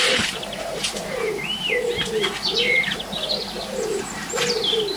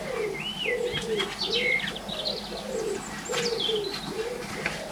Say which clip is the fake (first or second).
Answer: first